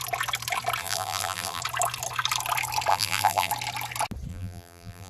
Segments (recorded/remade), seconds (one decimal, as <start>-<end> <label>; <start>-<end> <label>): 0.0-0.8 recorded; 0.8-1.6 remade; 1.6-2.9 recorded; 2.9-3.5 remade; 3.5-4.3 recorded; 4.3-5.1 remade